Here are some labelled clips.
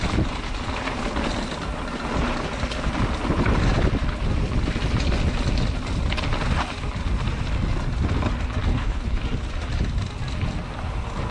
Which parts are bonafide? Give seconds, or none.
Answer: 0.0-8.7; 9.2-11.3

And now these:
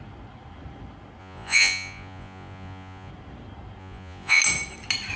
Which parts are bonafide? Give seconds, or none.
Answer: 0.0-1.2; 3.1-3.8; 4.4-5.2

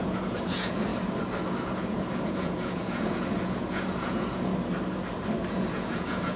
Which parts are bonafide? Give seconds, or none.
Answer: 0.9-1.6; 4.5-5.5